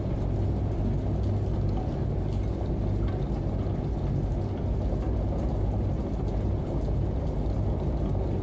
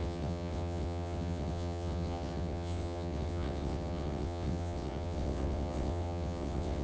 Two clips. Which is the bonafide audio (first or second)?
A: first